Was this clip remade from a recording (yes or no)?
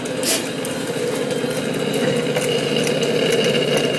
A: no